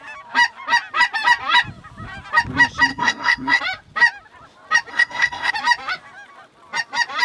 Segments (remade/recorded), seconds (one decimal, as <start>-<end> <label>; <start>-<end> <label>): 0.0-2.9 recorded; 2.9-3.6 remade; 3.6-4.9 recorded; 4.9-5.5 remade; 5.5-7.2 recorded

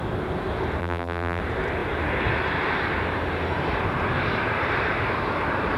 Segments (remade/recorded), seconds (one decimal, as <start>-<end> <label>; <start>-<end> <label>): 0.0-0.8 recorded; 0.8-1.4 remade; 1.4-5.8 recorded

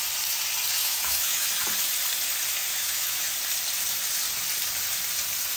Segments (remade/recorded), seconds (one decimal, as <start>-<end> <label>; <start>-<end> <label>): 0.0-0.8 recorded; 0.8-1.5 remade; 1.5-2.7 recorded; 2.7-3.3 remade; 3.3-5.6 recorded

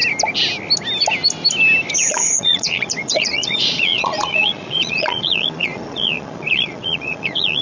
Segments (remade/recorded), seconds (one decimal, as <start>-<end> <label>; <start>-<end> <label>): 0.0-1.9 recorded; 1.9-7.6 remade

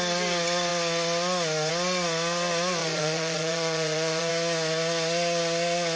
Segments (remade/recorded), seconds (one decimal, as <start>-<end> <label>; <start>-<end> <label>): 0.0-2.8 recorded; 2.8-4.3 remade; 4.3-6.0 recorded

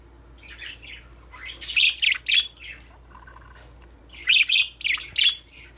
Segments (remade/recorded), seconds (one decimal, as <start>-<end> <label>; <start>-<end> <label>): 0.0-5.8 recorded

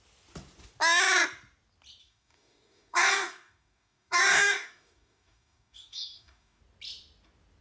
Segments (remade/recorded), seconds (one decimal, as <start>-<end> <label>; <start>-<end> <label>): 0.0-2.0 recorded; 2.0-6.6 remade; 6.6-7.6 recorded

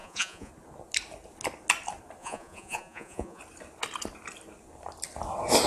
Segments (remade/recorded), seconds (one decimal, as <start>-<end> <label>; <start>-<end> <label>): 0.0-0.5 remade; 0.5-2.2 recorded; 2.2-3.4 remade; 3.4-5.7 recorded